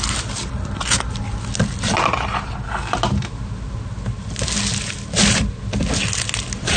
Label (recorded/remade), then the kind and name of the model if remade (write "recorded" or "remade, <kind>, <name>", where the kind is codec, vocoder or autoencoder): recorded